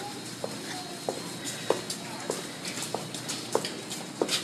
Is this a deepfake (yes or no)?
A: no